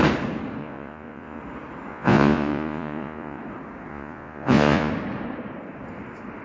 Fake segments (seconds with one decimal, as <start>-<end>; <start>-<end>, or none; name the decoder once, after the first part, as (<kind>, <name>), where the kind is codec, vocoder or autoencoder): 0.6-1.4 (vocoder, Vocos); 1.9-3.4; 3.9-4.9

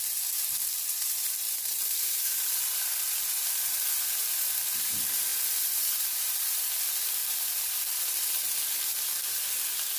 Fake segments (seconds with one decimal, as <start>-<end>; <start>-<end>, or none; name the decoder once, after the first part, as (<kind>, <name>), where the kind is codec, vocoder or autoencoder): 0.0-7.2 (vocoder, BigVGAN v2); 7.9-10.0